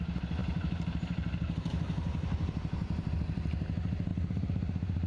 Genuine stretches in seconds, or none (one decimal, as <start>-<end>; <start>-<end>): 0.0-0.4; 3.1-4.1